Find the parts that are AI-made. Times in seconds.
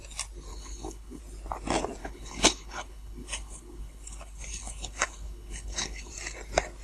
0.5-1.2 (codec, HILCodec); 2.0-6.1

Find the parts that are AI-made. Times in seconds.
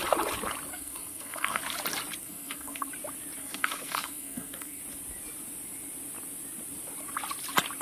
0.7-1.6 (codec, SNAC); 2.2-2.9; 3.4-4.8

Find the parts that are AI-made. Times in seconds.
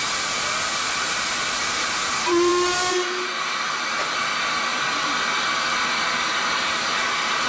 none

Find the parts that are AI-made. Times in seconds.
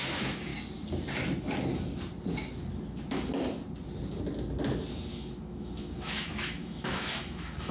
0.0-0.5 (autoencoder, DAC-VAE); 5.1-7.7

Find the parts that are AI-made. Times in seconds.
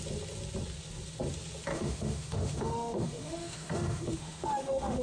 1.7-5.0 (autoencoder, DAC-VAE)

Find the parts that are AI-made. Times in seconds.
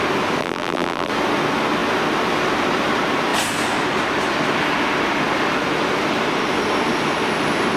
0.4-1.1 (vocoder, BigVGAN v2)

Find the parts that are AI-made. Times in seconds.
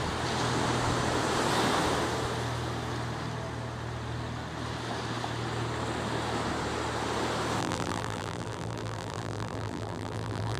7.6-10.6 (vocoder, BigVGAN v2)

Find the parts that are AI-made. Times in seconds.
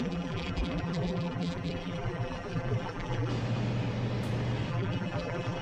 0.0-3.3 (vocoder, BigVGAN v2); 4.7-5.6